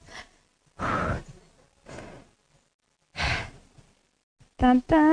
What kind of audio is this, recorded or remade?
recorded